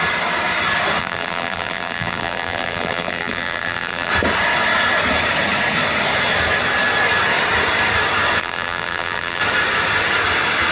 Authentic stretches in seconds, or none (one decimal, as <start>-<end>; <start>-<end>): 0.0-1.0; 4.1-8.4; 9.4-10.7

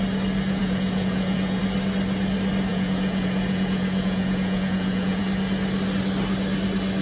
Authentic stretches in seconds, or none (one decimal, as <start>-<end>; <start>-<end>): 0.0-0.6; 1.6-2.7; 5.2-7.0

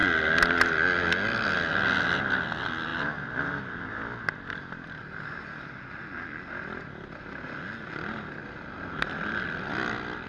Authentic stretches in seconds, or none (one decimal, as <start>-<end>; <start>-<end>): 0.0-10.3

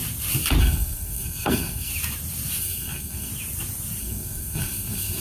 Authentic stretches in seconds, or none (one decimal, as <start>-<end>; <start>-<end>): 0.0-0.6; 1.9-2.6; 3.3-4.0

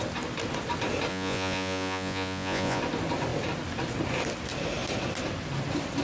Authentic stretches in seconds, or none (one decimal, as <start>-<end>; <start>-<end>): 0.0-1.1; 2.8-6.0

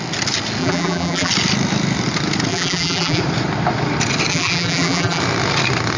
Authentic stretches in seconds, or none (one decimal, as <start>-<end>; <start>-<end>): 0.0-0.6; 1.3-2.5; 3.2-4.3; 5.2-6.0